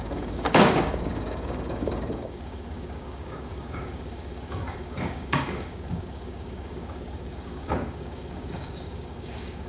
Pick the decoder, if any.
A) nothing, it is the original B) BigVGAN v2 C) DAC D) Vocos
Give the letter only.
C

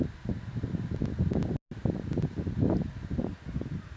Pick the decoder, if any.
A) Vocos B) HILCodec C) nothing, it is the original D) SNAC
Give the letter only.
C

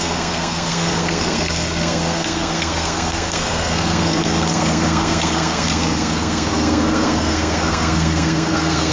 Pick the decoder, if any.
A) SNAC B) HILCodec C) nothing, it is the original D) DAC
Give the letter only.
A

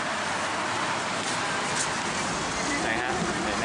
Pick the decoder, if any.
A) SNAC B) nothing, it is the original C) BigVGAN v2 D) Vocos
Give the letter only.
B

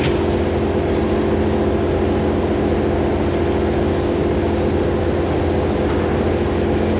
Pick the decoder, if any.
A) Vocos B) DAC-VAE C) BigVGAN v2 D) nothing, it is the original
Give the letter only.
D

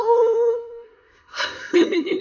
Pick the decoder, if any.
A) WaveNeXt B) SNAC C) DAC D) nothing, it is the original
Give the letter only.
B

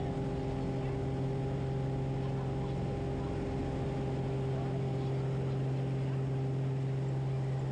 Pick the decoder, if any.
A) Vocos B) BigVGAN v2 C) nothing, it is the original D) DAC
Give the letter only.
C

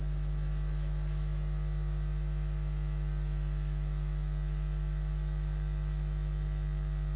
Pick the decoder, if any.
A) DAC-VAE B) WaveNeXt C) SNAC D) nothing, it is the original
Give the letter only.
A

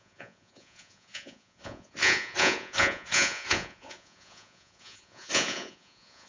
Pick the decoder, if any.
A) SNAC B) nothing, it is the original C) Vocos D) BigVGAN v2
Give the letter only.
C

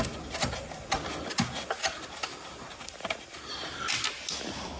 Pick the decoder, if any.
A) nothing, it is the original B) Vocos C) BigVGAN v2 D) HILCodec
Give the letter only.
A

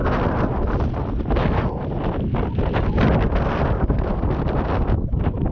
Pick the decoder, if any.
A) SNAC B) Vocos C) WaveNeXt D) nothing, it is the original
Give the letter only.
D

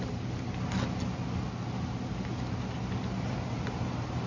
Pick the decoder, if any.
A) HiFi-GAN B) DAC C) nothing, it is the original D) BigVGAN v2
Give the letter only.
C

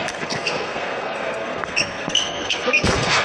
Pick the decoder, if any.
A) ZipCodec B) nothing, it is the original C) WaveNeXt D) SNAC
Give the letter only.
D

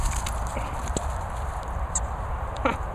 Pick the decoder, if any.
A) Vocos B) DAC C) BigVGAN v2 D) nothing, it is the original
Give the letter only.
D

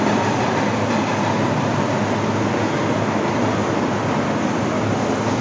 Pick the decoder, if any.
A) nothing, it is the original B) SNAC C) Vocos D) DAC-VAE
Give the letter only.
A